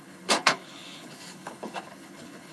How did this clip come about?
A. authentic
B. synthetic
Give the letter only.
B